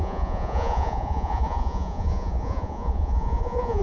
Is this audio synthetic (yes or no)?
yes